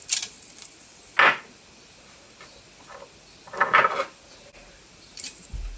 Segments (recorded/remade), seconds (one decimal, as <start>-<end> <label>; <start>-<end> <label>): 0.0-5.8 recorded